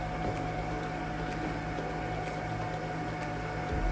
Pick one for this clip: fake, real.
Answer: real